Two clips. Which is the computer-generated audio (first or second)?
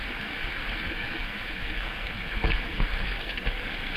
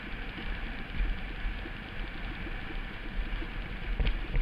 first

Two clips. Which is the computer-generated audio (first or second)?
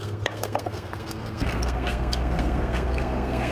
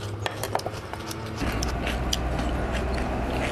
first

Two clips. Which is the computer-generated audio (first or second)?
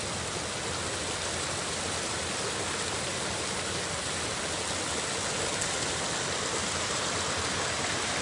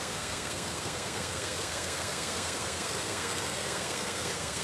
second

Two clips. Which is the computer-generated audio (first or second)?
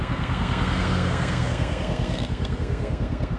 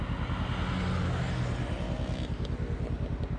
first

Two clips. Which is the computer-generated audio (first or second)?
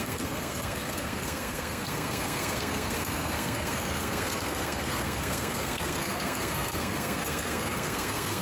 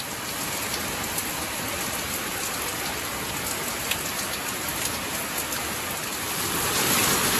first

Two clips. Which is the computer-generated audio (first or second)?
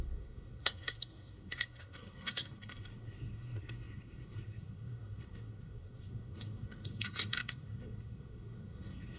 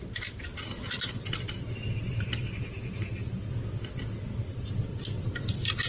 first